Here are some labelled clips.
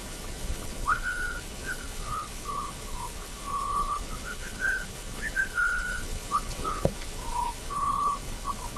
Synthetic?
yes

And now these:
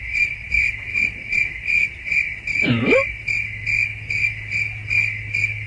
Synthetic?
no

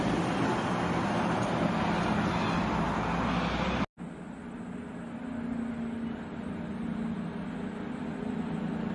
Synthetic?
no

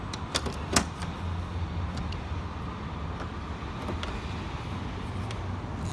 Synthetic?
no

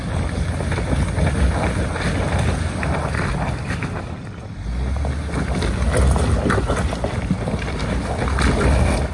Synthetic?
no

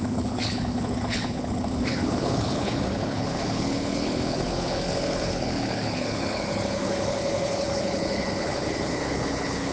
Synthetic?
yes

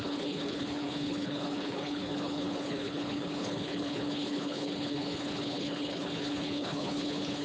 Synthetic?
yes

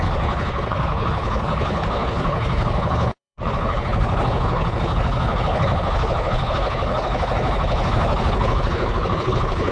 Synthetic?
yes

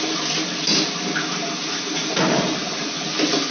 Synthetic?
no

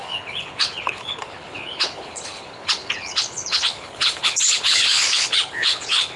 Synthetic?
yes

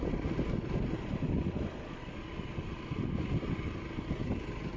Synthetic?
no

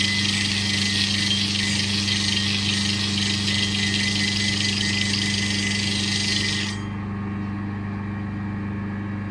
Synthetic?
no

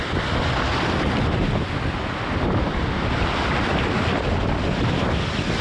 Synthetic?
no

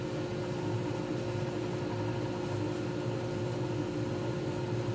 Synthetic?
no